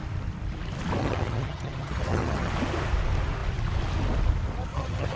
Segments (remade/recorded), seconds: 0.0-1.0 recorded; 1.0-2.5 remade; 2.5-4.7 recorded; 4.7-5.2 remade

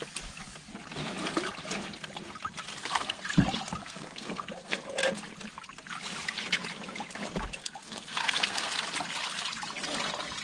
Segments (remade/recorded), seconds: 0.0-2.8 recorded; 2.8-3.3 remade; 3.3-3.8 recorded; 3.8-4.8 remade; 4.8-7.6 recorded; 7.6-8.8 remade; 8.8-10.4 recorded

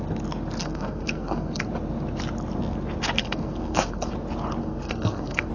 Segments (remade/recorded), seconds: 0.0-0.6 recorded; 0.6-1.7 remade; 1.7-3.2 recorded; 3.2-4.1 remade; 4.1-4.6 recorded; 4.6-5.5 remade

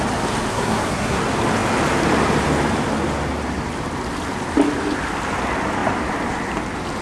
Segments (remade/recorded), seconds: 0.0-0.5 recorded; 0.5-1.2 remade; 1.2-7.0 recorded

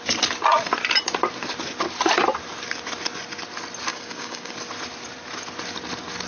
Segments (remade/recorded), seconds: 0.0-3.9 recorded; 3.9-4.5 remade; 4.5-6.3 recorded

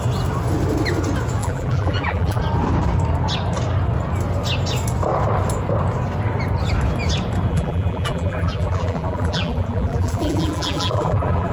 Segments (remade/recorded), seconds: 0.0-1.4 recorded; 1.4-2.4 remade; 2.4-7.5 recorded; 7.5-11.5 remade

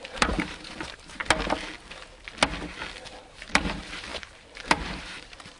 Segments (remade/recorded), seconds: 0.0-1.2 remade; 1.2-3.2 recorded; 3.2-5.6 remade

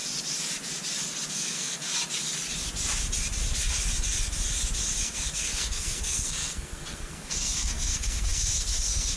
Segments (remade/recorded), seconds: 0.0-1.3 recorded; 1.3-1.9 remade; 1.9-5.0 recorded; 5.0-9.2 remade